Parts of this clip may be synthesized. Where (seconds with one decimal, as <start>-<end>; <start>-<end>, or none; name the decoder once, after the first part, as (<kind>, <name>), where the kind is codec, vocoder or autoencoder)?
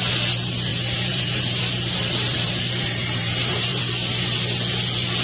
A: 0.7-3.8 (vocoder, BigVGAN v2)